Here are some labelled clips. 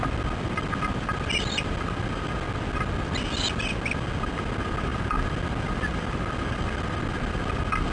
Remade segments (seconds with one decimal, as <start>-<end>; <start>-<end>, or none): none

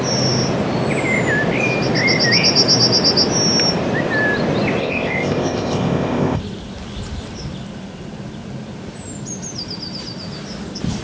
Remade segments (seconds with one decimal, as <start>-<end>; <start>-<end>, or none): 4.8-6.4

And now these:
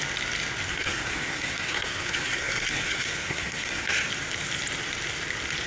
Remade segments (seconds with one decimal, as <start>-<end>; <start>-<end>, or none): 0.7-4.1